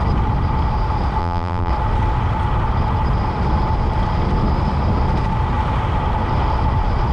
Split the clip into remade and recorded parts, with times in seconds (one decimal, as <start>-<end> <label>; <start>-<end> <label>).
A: 0.0-1.2 recorded; 1.2-1.7 remade; 1.7-7.1 recorded